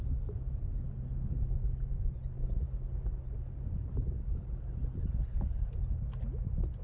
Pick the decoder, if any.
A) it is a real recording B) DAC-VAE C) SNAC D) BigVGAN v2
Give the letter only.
A